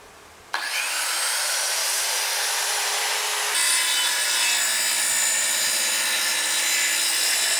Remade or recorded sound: recorded